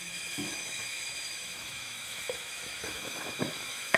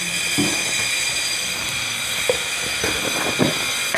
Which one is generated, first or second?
first